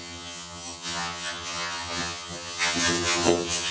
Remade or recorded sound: remade